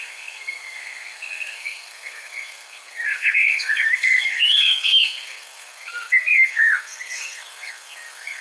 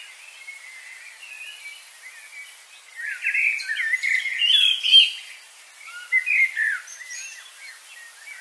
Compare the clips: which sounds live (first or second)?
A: second